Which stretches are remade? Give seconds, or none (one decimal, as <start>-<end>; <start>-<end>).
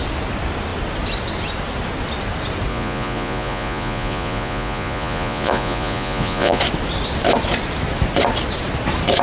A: 2.7-6.6